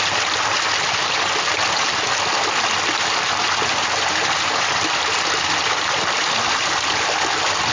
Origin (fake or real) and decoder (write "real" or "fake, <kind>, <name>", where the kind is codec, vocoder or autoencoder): real